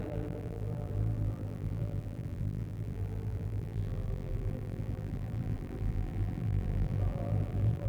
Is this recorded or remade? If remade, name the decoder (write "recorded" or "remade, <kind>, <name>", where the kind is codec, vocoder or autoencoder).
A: remade, vocoder, BigVGAN v2